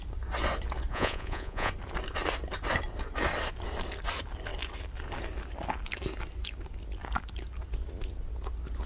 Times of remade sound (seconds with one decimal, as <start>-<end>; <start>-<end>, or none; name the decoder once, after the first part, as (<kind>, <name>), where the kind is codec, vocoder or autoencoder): 0.9-1.7 (vocoder, Vocos)